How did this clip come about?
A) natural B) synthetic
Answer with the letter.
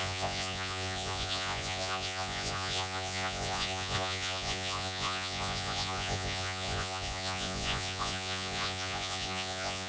B